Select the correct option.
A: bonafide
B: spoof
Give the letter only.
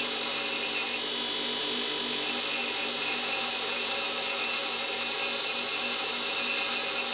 A